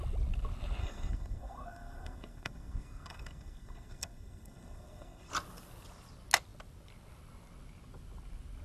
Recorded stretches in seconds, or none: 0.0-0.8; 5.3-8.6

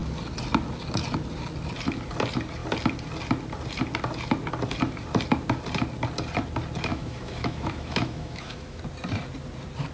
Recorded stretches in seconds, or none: 0.0-6.9; 8.8-9.9

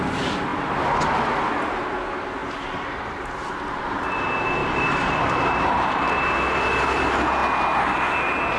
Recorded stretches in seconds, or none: 0.0-0.5; 1.4-2.4; 4.1-4.6; 6.2-8.6

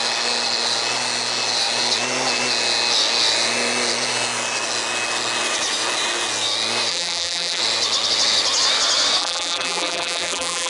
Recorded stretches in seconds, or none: 0.0-6.9; 7.6-9.2

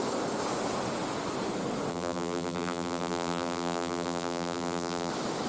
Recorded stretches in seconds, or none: 0.0-1.9; 5.1-5.5

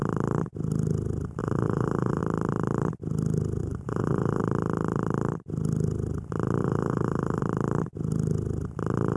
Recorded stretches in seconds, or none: 0.0-1.4; 2.2-3.6; 4.4-6.6; 7.4-9.2